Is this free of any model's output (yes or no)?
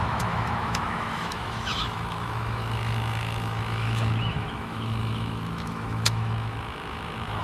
no